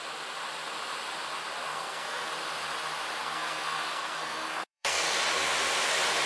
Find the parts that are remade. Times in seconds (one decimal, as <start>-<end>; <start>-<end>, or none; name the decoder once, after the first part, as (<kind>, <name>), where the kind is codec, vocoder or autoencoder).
1.7-2.3 (codec, SNAC); 3.2-5.1

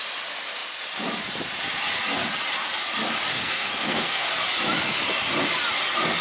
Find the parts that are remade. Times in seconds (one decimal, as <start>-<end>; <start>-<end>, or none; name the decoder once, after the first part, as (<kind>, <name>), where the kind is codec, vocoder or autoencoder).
3.3-4.3 (codec, SNAC)

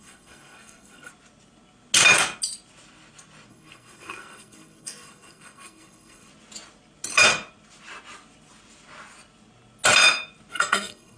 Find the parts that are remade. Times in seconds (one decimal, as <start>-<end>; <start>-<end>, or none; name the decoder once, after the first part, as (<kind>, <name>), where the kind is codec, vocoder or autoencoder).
0.0-1.1 (codec, SNAC); 3.5-6.3; 10.5-11.2

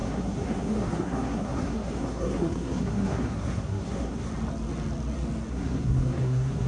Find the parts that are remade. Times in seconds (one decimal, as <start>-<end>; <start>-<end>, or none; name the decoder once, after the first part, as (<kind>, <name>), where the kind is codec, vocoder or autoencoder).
0.0-4.3 (codec, SNAC); 5.5-6.7

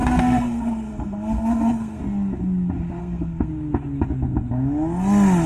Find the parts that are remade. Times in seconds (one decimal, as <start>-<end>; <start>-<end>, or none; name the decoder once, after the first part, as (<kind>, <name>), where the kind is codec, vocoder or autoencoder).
0.0-2.0 (codec, SNAC); 3.0-3.5

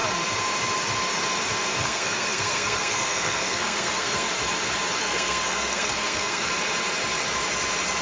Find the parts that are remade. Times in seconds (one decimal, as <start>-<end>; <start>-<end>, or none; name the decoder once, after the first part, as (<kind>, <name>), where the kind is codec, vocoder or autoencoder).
1.8-4.3 (codec, SNAC); 5.0-6.5